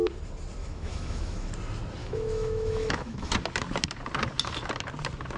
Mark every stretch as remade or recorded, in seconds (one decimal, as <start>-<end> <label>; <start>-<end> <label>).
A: 0.0-0.6 recorded; 0.6-1.5 remade; 1.5-2.0 recorded; 2.0-3.3 remade; 3.3-5.4 recorded

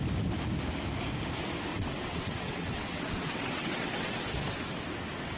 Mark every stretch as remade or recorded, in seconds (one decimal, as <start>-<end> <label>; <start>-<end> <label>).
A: 0.0-1.7 recorded; 1.7-4.2 remade; 4.2-5.4 recorded

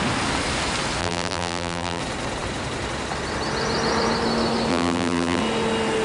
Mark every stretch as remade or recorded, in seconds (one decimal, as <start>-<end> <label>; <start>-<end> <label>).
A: 0.0-1.0 recorded; 1.0-2.0 remade; 2.0-4.7 recorded; 4.7-5.4 remade; 5.4-6.0 recorded

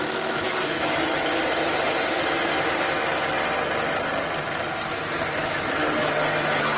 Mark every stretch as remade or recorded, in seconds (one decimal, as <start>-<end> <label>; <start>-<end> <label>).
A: 0.0-1.3 remade; 1.3-4.9 recorded; 4.9-5.8 remade; 5.8-6.8 recorded

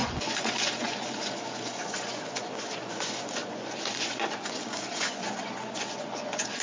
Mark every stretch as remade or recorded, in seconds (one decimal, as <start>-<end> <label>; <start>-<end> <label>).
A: 0.0-6.6 remade

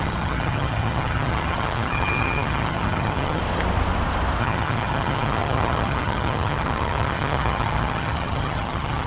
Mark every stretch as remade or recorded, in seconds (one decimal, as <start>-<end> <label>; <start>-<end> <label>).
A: 0.0-3.4 remade; 3.4-4.4 recorded; 4.4-9.1 remade

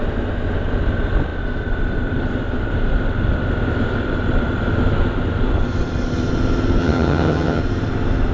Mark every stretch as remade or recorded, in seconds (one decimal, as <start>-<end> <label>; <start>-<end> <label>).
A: 0.0-6.8 recorded; 6.8-7.6 remade; 7.6-8.3 recorded